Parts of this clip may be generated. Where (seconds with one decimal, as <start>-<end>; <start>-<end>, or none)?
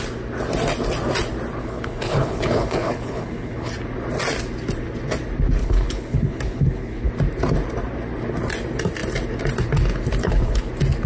1.6-3.7; 5.6-7.1; 10.2-10.7